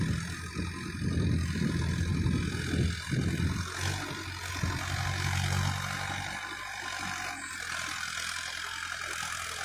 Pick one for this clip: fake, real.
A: real